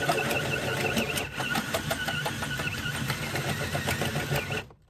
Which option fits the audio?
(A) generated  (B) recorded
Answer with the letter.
B